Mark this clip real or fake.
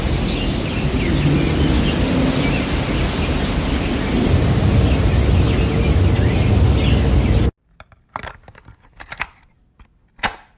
real